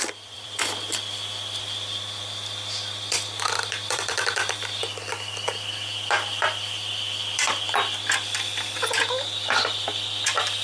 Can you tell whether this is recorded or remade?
remade